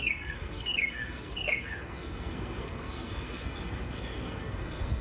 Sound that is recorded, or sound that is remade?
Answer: remade